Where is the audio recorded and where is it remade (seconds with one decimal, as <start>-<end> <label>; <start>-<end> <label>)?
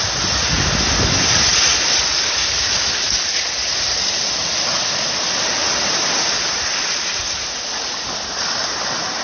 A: 0.0-2.4 recorded; 2.4-3.2 remade; 3.2-9.2 recorded